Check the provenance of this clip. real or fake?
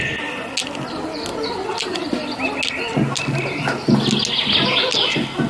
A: real